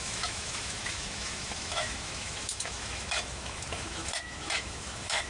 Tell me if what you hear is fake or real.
fake